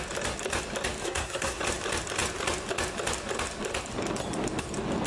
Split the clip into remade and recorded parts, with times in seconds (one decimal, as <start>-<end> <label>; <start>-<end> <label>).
0.0-1.0 recorded; 1.0-1.6 remade; 1.6-5.1 recorded